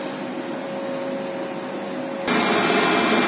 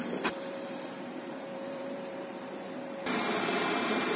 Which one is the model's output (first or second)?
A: second